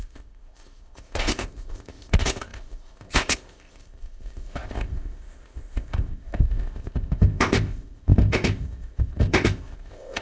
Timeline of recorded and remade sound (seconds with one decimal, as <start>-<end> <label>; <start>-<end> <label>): 0.0-10.2 remade